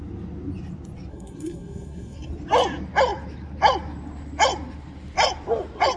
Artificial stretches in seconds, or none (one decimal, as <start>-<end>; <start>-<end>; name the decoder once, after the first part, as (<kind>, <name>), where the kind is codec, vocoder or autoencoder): 1.1-2.3 (codec, SNAC)